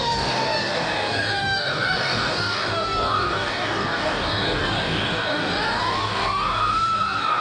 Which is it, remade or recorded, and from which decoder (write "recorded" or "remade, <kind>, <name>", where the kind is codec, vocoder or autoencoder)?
remade, codec, DAC